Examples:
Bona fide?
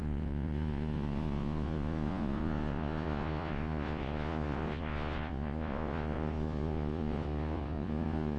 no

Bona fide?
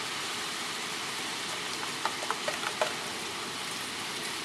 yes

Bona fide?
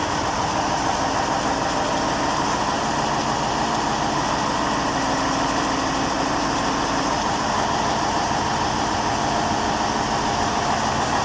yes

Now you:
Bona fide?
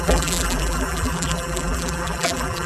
no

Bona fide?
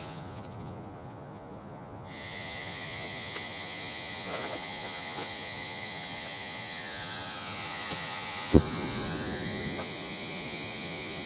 no